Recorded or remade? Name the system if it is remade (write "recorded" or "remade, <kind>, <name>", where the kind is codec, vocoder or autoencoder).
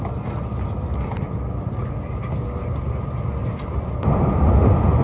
recorded